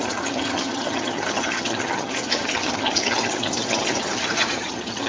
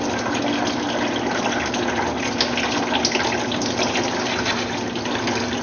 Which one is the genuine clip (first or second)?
second